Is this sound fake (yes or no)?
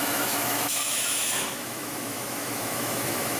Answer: yes